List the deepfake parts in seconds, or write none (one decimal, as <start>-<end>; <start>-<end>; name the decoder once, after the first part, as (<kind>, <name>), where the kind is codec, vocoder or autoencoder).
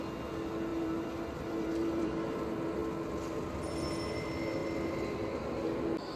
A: 0.7-2.4 (vocoder, BigVGAN v2)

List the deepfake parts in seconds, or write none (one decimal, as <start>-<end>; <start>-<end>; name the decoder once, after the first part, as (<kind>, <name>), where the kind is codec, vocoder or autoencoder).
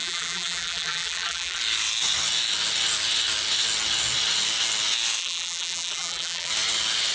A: 0.0-1.6 (vocoder, BigVGAN v2); 5.2-6.5